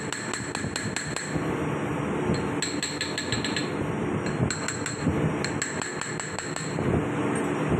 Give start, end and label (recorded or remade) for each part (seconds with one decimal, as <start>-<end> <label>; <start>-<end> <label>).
0.0-7.8 recorded